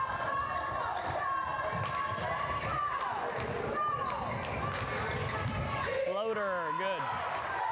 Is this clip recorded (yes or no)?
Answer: yes